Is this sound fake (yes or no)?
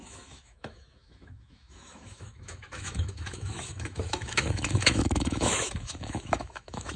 yes